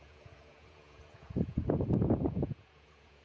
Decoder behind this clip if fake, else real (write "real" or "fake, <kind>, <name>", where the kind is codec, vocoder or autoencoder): fake, vocoder, Vocos